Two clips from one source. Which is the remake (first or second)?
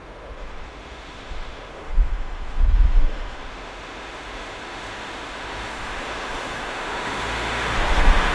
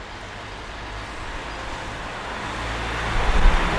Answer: first